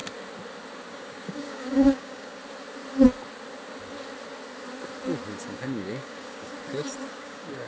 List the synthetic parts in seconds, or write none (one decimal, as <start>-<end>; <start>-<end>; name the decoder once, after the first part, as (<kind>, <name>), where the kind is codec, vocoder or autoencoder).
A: 0.9-2.4 (codec, DAC); 5.4-6.5; 7.1-7.7